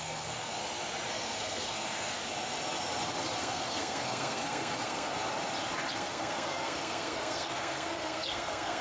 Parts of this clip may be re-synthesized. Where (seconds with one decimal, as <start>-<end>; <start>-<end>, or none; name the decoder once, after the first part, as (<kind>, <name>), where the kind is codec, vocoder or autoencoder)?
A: 0.0-0.6 (codec, SNAC); 1.1-2.2; 3.4-5.1; 5.9-8.8